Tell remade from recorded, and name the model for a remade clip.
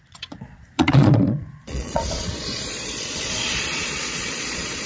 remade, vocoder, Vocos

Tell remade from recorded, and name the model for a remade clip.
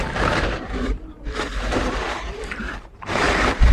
remade, vocoder, BigVGAN v2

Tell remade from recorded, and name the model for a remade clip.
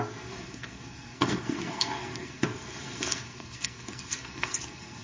remade, codec, SNAC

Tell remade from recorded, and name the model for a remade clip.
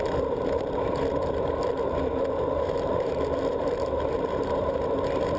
remade, vocoder, BigVGAN v2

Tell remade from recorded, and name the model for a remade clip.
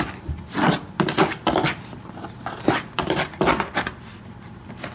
recorded